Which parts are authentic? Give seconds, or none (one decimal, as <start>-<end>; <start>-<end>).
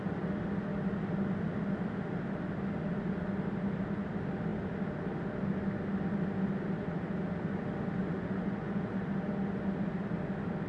0.0-8.0; 9.0-10.7